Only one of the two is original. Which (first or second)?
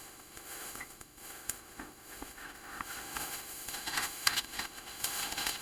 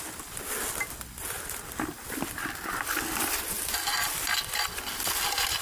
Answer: second